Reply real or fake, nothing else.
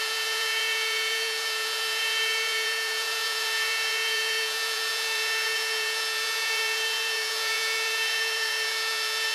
fake